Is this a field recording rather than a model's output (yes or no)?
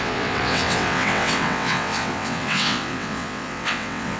no